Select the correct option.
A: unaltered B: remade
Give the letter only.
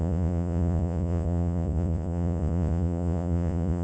B